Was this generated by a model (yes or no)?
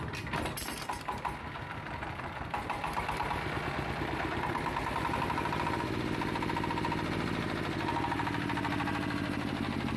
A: no